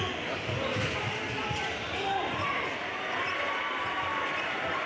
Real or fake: fake